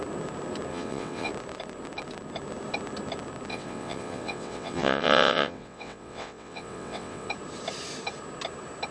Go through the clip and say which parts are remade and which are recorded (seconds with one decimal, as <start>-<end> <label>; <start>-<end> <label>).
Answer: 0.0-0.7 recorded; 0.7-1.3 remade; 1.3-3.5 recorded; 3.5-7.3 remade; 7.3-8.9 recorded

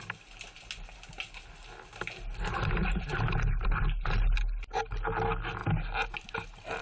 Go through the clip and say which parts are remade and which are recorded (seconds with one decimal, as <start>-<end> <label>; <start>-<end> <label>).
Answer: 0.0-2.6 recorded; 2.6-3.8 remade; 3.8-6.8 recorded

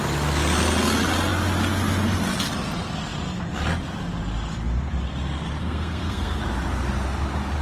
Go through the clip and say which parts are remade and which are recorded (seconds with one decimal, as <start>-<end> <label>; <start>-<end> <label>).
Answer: 0.0-5.6 recorded; 5.6-6.4 remade; 6.4-7.6 recorded